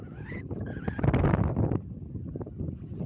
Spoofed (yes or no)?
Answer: no